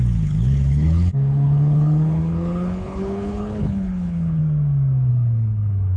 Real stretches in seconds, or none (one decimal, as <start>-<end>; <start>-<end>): 4.4-5.1

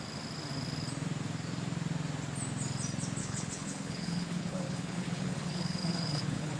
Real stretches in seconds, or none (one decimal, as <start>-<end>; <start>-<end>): 0.0-3.2